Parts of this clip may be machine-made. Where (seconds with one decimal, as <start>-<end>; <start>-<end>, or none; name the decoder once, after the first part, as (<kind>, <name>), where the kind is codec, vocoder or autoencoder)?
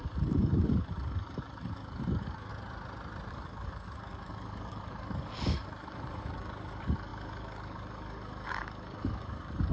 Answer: 0.0-2.5 (codec, DAC); 3.3-9.7